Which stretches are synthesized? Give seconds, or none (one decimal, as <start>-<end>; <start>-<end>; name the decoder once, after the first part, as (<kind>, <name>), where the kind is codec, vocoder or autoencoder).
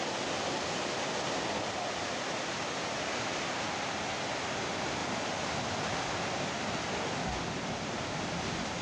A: none